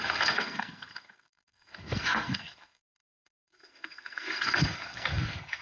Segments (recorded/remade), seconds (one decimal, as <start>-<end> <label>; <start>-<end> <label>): 0.0-5.6 remade